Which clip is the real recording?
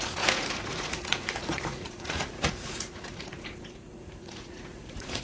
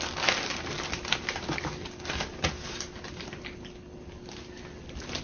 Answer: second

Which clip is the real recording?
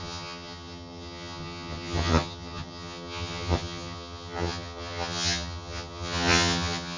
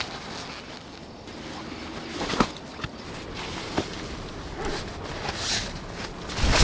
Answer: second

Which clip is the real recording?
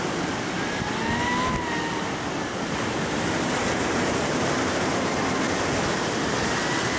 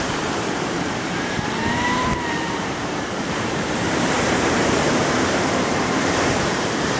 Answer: first